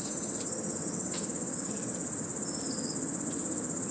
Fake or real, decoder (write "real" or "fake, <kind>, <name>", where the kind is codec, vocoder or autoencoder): real